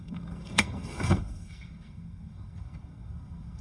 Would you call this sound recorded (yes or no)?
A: no